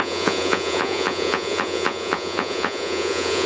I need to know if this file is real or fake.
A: fake